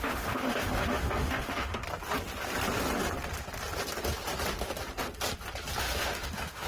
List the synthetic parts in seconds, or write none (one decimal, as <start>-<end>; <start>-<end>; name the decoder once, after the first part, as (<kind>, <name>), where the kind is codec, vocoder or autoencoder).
0.0-1.8 (autoencoder, DAC-VAE); 5.8-6.7